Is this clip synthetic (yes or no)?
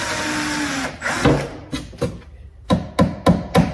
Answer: no